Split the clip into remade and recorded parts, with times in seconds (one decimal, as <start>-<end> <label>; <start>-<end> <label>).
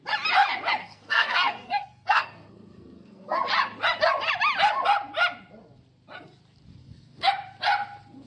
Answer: 0.0-0.8 recorded; 0.8-3.4 remade; 3.4-6.8 recorded; 6.8-7.3 remade; 7.3-8.3 recorded